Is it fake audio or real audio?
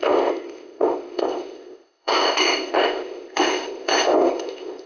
fake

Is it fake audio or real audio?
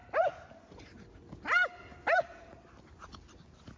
real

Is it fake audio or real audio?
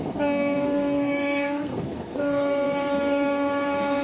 fake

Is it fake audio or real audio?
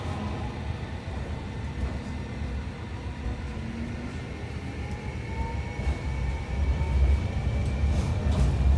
real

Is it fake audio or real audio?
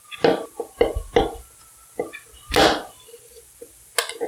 real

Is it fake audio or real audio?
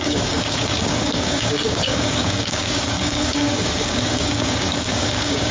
fake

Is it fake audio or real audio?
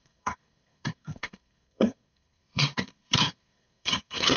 fake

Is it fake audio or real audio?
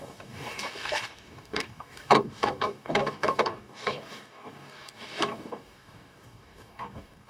fake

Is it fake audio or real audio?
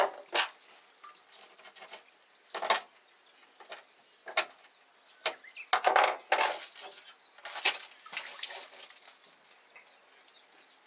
real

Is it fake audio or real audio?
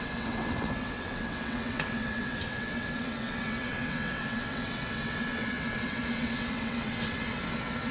fake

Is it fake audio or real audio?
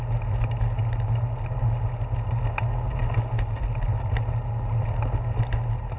real